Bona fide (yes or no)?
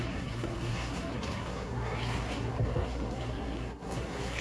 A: no